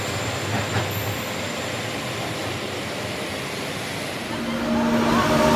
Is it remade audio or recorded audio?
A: recorded